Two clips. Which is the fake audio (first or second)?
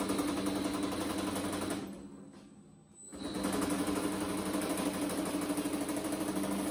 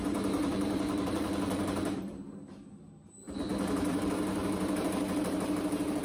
second